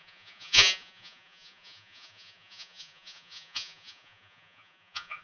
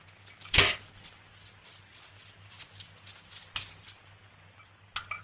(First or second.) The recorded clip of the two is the second